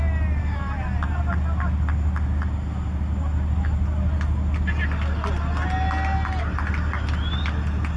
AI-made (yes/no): no